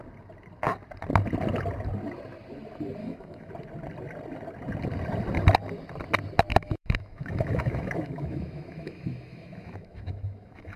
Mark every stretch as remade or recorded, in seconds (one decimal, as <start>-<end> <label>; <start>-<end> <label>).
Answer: 0.0-3.0 recorded; 3.0-3.5 remade; 3.5-6.5 recorded; 6.5-10.8 remade